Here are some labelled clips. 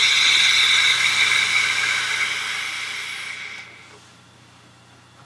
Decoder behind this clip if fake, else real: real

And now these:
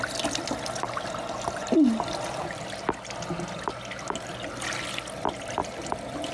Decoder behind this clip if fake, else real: real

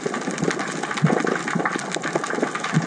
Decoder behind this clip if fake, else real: real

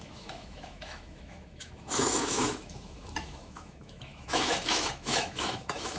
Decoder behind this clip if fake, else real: fake, autoencoder, DAC-VAE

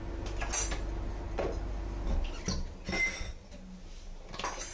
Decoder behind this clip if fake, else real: real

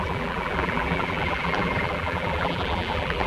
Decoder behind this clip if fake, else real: fake, vocoder, BigVGAN v2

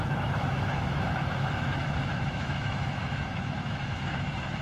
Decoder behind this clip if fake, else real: fake, autoencoder, DAC-VAE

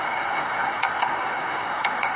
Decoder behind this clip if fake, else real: fake, codec, SNAC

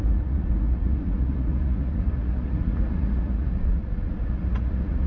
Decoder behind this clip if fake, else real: fake, vocoder, Vocos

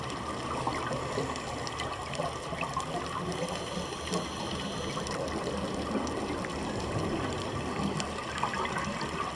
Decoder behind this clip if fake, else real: real